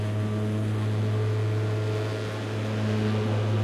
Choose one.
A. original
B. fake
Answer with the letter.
A